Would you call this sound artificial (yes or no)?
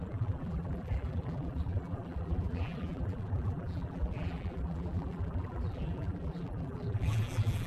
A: yes